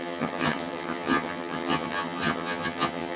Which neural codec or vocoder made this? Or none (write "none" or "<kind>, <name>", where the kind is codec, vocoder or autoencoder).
vocoder, HiFi-GAN